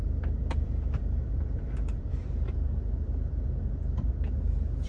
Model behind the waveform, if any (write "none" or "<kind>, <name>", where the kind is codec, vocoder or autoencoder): vocoder, BigVGAN v2